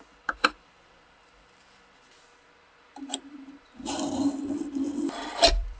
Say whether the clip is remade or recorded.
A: remade